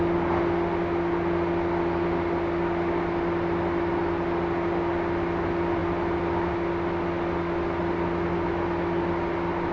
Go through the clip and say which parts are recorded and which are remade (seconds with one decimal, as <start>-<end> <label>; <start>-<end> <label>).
0.0-9.7 recorded